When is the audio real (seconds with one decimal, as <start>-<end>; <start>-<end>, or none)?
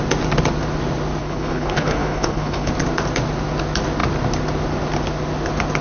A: 0.0-1.2; 2.7-5.8